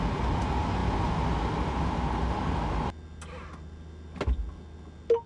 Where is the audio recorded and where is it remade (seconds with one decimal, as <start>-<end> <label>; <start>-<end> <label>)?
0.0-5.3 recorded